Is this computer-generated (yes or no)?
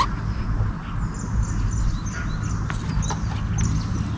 no